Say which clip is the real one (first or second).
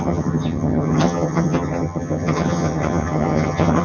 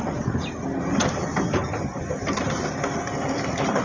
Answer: second